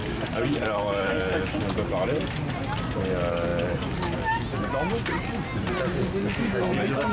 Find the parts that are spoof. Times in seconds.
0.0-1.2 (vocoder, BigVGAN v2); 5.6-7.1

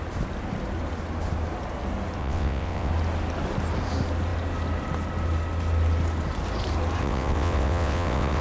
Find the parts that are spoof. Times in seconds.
2.2-2.9 (vocoder, WaveNeXt); 7.0-8.4